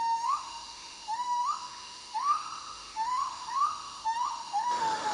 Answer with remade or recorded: remade